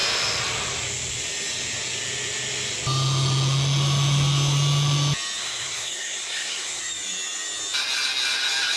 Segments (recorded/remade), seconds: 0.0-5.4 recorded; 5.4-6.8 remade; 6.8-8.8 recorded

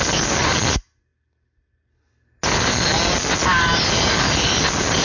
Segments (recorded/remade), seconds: 0.0-5.0 recorded